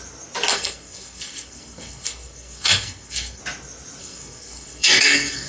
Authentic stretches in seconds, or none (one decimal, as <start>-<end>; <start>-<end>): 0.0-0.5; 3.4-4.0